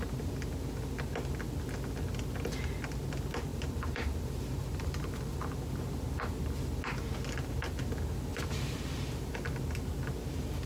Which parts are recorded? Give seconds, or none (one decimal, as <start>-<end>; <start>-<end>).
0.0-3.5; 5.5-8.3; 9.3-10.7